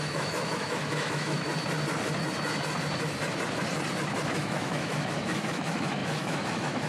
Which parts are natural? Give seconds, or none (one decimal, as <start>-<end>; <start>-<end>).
1.5-4.3